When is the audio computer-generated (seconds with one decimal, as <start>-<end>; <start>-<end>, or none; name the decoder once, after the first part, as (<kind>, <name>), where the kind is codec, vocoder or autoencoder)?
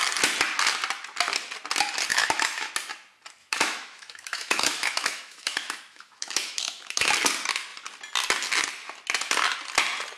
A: 2.1-2.7 (autoencoder, DAC-VAE); 3.4-7.1